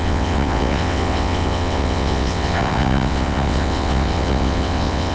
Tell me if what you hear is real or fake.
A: fake